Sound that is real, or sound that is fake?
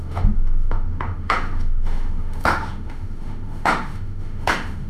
fake